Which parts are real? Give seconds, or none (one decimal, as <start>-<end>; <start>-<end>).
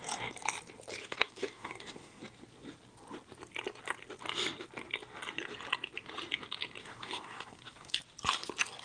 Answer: 0.0-1.0; 2.2-6.8; 8.0-8.8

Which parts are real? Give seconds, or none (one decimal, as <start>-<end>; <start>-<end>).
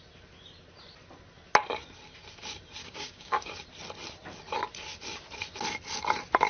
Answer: 0.0-2.8; 3.5-6.5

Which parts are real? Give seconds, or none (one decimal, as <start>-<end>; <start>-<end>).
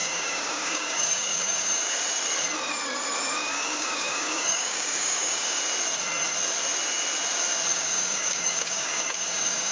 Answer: 2.0-3.4; 5.6-7.7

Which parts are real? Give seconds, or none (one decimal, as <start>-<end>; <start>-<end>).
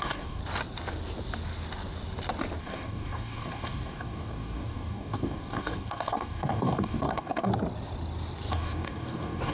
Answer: 0.4-2.6; 7.5-8.5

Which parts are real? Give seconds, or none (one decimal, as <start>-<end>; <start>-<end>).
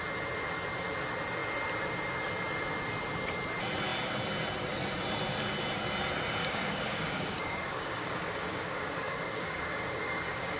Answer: 0.0-6.4